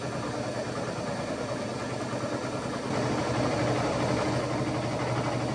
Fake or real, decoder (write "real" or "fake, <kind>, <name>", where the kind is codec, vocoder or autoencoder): real